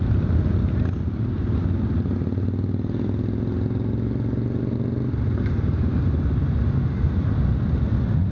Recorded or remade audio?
recorded